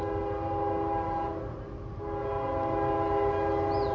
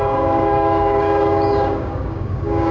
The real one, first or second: first